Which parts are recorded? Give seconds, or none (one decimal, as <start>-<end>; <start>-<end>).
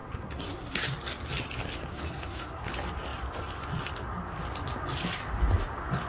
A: 0.8-1.9; 2.7-6.1